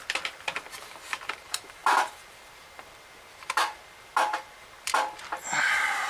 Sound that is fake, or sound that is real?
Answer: fake